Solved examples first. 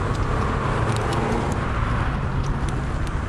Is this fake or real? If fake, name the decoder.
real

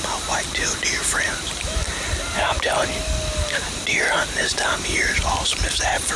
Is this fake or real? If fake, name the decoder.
real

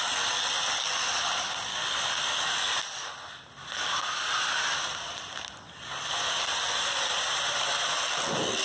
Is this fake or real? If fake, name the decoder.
real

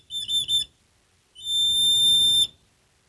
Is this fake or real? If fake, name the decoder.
real